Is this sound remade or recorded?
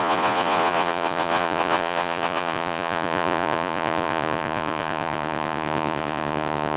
remade